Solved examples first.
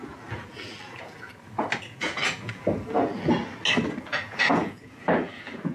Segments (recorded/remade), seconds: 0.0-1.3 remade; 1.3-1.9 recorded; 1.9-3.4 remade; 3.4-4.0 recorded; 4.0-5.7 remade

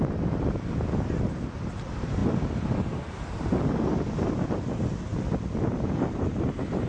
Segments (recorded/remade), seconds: 0.0-6.9 recorded

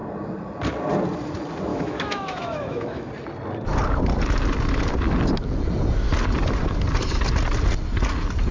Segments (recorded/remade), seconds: 0.0-1.7 recorded; 1.7-3.1 remade; 3.1-8.5 recorded

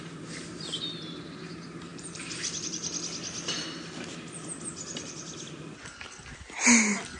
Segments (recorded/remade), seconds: 0.0-2.8 remade; 2.8-7.2 recorded

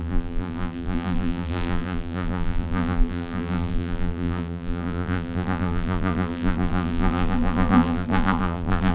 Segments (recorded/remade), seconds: 0.0-8.9 remade

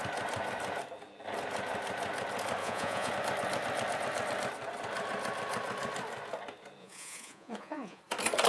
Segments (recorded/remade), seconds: 0.0-2.6 recorded; 2.6-3.1 remade; 3.1-6.8 recorded; 6.8-8.0 remade; 8.0-8.5 recorded